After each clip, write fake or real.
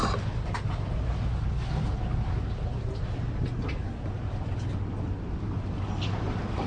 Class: real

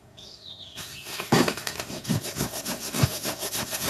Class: fake